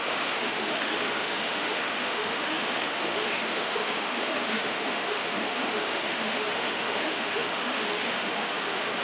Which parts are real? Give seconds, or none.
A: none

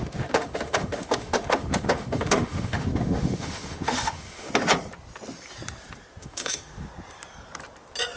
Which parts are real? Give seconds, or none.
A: 4.5-6.2; 6.9-8.2

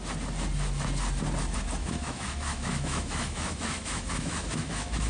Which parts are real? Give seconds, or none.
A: 0.0-1.8

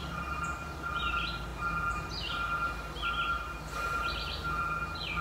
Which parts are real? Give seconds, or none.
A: 0.0-5.2